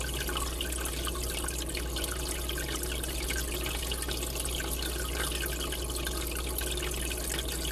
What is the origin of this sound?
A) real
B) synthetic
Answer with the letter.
A